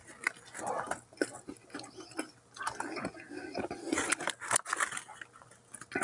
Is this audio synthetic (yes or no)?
no